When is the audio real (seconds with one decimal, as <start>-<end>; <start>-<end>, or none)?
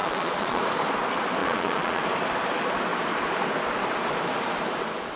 0.6-1.4; 2.0-5.2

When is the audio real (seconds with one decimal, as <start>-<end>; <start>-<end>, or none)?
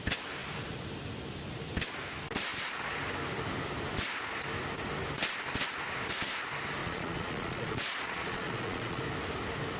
0.0-6.8; 9.0-9.8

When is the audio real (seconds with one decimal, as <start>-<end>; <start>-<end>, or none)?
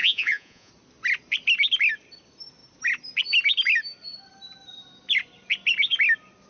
0.7-6.5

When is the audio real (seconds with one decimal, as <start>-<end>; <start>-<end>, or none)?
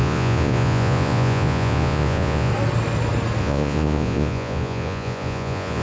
2.5-3.4